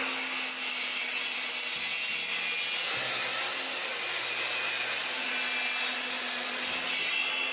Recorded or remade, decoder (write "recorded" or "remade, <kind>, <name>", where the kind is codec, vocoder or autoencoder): recorded